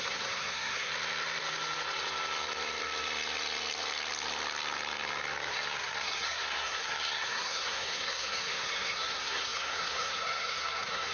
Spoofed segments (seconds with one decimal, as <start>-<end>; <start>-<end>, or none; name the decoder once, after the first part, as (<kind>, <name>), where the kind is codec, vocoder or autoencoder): 0.0-0.9 (codec, SNAC); 5.5-11.1